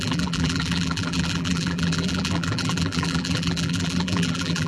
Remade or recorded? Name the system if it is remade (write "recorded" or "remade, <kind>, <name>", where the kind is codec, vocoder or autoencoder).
remade, vocoder, BigVGAN v2